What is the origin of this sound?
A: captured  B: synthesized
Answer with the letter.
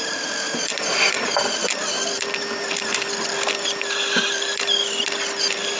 B